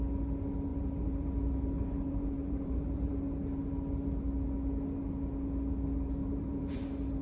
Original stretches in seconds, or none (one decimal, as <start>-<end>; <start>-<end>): 0.0-0.7; 3.1-6.2; 6.8-7.2